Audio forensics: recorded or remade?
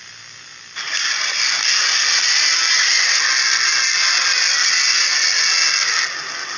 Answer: recorded